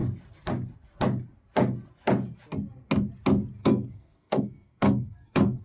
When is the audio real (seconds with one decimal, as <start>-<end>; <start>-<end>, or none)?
0.0-3.6